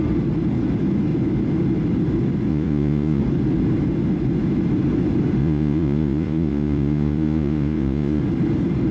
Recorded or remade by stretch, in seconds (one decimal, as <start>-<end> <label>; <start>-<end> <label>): 0.0-2.5 recorded; 2.5-3.2 remade; 3.2-5.4 recorded; 5.4-8.2 remade; 8.2-8.9 recorded